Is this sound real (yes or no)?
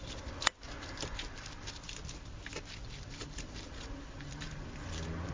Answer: yes